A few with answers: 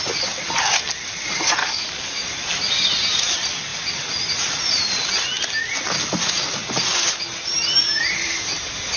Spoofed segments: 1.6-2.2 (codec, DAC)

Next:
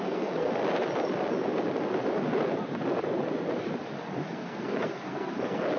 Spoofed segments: 0.0-0.6 (codec, SNAC); 4.1-5.8

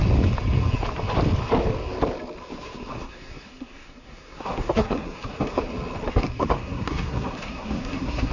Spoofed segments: 2.9-5.6 (codec, SNAC); 6.1-8.3

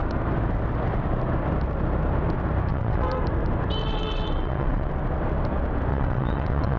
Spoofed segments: 2.7-3.2 (vocoder, WaveNeXt); 3.8-4.9; 5.9-6.8

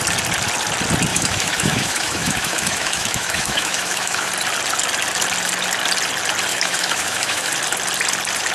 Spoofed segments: 1.1-4.3 (autoencoder, DAC-VAE); 6.5-7.5

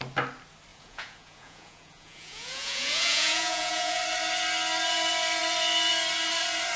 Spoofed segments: 0.7-4.0 (vocoder, Vocos)

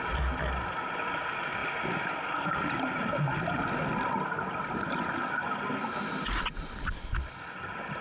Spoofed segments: none